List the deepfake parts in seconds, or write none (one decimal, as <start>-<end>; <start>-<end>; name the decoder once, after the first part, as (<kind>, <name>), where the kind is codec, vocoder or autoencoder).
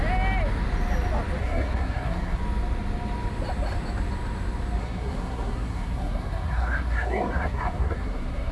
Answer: 1.4-2.4 (codec, SNAC); 4.8-8.5